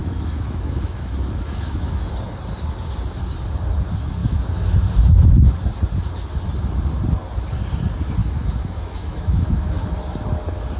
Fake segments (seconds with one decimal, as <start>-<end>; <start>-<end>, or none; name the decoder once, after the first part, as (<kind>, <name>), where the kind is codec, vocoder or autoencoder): 0.0-2.1 (autoencoder, DAC-VAE); 4.2-5.0; 8.2-10.0